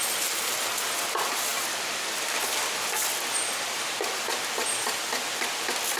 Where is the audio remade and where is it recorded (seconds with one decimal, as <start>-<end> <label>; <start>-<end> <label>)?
0.0-1.5 recorded; 1.5-5.1 remade; 5.1-6.0 recorded